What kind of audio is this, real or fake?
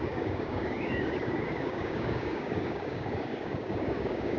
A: fake